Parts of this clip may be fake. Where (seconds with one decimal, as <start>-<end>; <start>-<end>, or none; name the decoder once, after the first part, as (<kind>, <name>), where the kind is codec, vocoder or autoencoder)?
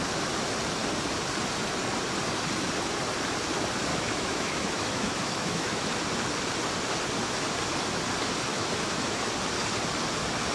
3.9-5.8 (autoencoder, DAC-VAE); 8.5-9.3